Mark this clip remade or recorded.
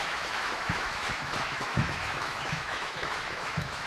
remade